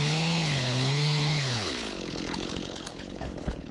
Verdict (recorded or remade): remade